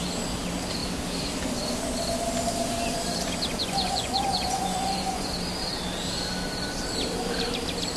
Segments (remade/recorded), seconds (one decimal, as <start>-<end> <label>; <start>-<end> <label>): 0.0-3.6 recorded; 3.6-5.3 remade; 5.3-8.0 recorded